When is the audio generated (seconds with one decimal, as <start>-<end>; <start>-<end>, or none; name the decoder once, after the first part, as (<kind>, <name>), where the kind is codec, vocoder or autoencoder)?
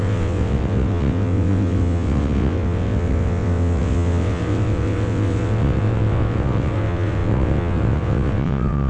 0.0-8.9 (vocoder, WaveNeXt)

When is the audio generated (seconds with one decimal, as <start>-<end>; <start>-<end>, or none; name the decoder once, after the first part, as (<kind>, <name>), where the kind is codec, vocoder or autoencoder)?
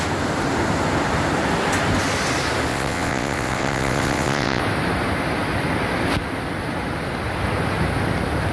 2.7-4.6 (vocoder, WaveNeXt)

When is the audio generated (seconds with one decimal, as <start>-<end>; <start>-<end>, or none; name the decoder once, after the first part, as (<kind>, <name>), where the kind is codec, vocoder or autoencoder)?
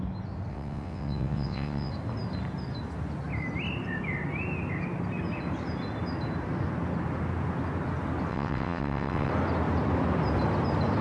0.5-1.9 (vocoder, WaveNeXt); 8.3-9.3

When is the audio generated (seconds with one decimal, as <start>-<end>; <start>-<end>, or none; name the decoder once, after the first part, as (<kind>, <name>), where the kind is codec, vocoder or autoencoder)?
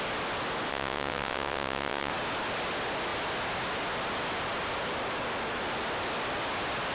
0.7-2.1 (vocoder, WaveNeXt)